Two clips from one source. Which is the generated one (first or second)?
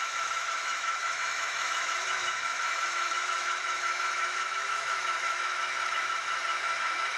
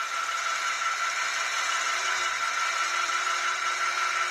first